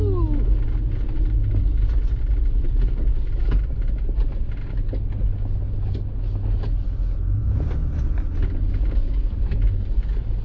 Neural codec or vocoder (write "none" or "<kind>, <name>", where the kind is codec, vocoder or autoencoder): none